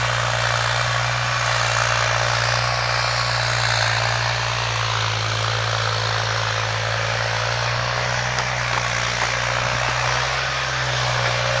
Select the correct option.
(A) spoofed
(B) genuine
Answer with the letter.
B